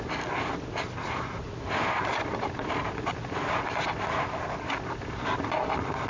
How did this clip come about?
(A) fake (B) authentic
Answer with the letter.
B